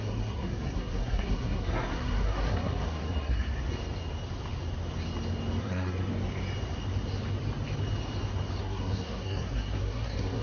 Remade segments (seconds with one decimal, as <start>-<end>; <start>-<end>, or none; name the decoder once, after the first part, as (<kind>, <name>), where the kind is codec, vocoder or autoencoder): 0.0-3.5 (codec, SNAC); 5.6-6.1; 8.6-10.4